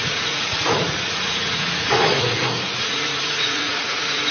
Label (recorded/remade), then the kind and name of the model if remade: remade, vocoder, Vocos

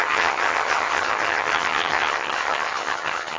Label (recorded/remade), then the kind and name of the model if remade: remade, vocoder, HiFi-GAN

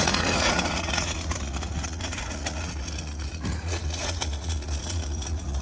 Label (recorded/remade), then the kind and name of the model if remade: remade, vocoder, Vocos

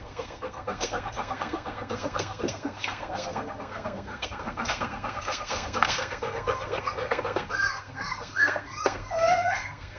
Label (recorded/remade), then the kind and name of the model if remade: remade, codec, SNAC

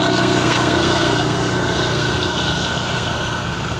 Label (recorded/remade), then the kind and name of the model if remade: remade, codec, SNAC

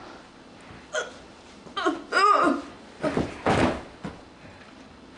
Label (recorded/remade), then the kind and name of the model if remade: recorded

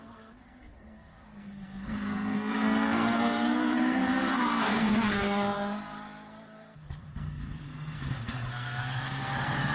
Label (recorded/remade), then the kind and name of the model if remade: remade, codec, SNAC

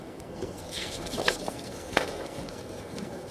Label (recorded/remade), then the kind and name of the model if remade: remade, codec, SNAC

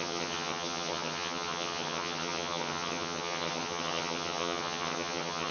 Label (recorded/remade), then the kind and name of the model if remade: remade, vocoder, HiFi-GAN